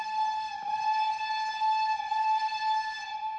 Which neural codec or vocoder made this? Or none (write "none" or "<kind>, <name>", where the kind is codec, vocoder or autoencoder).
none